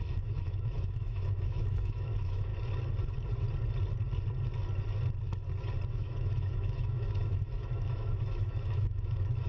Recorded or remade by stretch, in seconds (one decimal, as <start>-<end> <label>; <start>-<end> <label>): 0.0-2.5 remade; 2.5-5.9 recorded; 5.9-9.5 remade